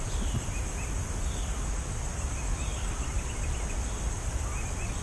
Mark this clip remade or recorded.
remade